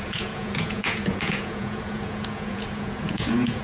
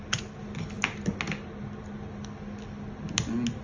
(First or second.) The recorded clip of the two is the second